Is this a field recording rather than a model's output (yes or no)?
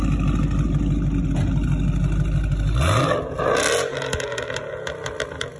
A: yes